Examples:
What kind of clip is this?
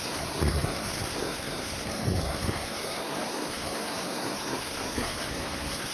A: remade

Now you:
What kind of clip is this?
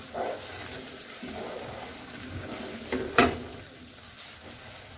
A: recorded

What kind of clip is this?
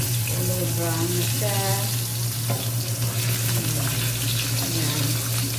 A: recorded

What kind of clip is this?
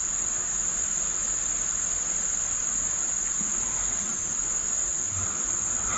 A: recorded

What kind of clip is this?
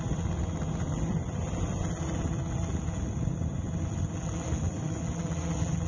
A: recorded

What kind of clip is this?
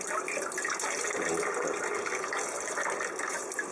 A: recorded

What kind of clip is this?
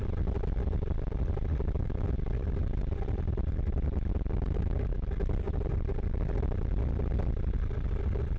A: remade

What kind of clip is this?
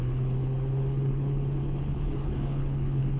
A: remade